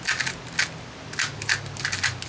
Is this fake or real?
real